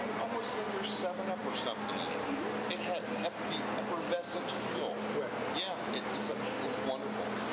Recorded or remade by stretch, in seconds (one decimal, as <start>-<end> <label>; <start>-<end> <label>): 0.0-7.5 recorded